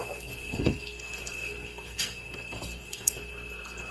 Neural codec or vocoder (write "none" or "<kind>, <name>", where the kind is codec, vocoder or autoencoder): codec, SNAC